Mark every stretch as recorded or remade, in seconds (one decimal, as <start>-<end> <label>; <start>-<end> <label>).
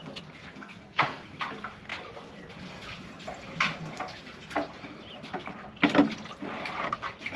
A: 0.0-0.5 recorded; 0.5-1.2 remade; 1.2-7.4 recorded